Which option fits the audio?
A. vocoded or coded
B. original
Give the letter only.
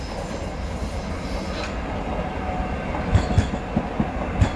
B